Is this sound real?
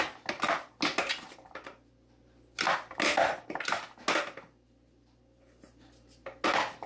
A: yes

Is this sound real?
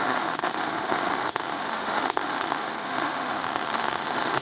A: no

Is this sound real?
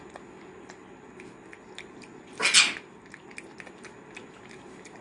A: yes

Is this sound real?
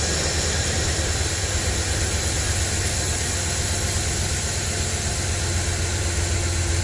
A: yes